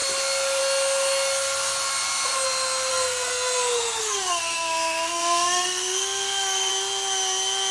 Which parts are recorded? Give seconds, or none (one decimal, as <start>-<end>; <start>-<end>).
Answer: 0.0-2.9; 6.7-7.7